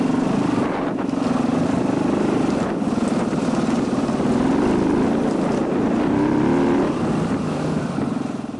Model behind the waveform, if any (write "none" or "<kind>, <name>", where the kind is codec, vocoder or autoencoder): none